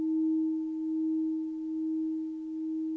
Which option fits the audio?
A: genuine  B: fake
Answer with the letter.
A